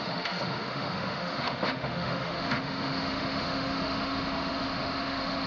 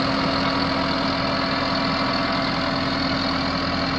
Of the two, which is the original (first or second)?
second